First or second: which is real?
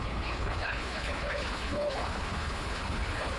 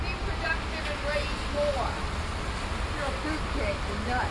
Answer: second